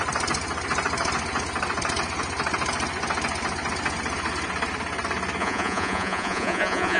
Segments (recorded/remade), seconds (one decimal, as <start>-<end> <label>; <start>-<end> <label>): 0.0-5.4 recorded; 5.4-7.0 remade